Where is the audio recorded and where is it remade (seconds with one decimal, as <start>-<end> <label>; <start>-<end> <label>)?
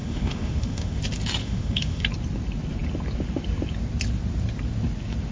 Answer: 0.0-1.0 remade; 1.0-1.4 recorded; 1.4-2.0 remade; 2.0-5.3 recorded